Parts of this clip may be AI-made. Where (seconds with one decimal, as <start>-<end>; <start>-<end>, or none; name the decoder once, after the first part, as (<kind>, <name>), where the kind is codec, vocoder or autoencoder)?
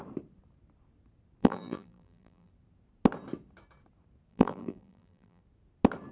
1.4-2.5 (vocoder, BigVGAN v2); 4.3-5.4